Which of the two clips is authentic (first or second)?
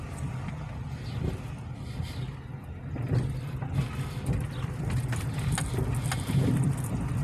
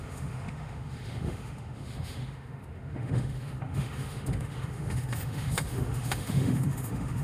first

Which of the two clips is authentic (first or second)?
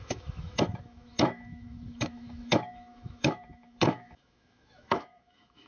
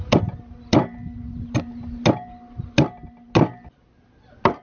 second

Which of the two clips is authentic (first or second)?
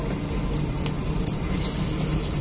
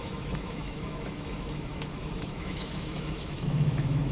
first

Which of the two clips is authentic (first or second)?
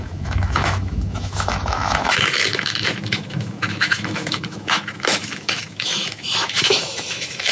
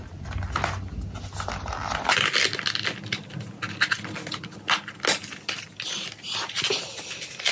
second